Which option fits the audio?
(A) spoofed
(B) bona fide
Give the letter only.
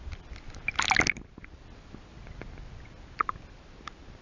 B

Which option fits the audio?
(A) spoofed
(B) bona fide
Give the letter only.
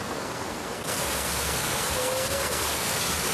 A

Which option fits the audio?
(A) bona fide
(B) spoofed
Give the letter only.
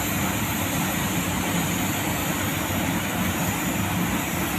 A